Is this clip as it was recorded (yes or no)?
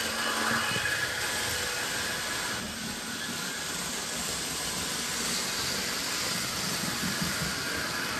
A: yes